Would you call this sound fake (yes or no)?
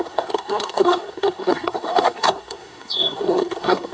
yes